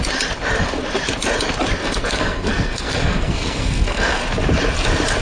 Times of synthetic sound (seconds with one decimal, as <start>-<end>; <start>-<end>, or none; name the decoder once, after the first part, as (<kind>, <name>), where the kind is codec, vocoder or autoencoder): 1.8-4.2 (codec, SNAC)